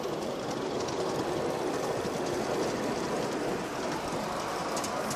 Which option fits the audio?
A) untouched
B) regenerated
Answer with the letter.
A